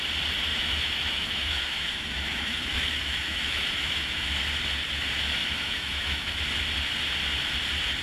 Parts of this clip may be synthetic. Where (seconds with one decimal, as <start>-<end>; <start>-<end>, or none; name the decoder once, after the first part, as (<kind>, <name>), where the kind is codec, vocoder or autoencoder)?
0.5-4.3 (autoencoder, DAC-VAE); 5.4-6.4